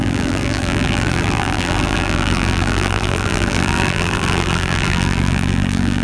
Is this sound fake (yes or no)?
yes